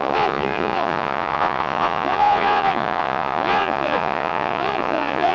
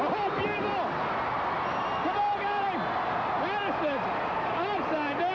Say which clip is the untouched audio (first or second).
second